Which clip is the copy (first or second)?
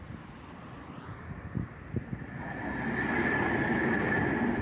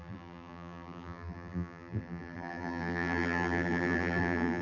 second